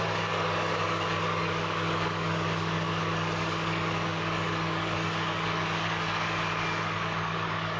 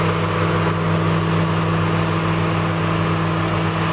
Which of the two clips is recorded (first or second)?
second